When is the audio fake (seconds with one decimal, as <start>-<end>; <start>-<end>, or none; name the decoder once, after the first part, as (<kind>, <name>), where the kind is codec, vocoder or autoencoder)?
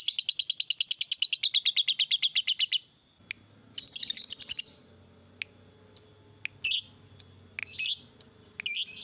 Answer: none